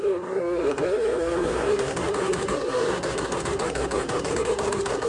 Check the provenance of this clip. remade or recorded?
remade